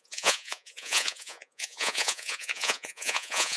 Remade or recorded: remade